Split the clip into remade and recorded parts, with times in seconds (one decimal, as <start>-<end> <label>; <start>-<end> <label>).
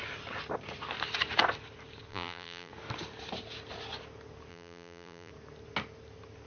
0.0-2.1 recorded; 2.1-2.7 remade; 2.7-4.5 recorded; 4.5-5.3 remade; 5.3-6.5 recorded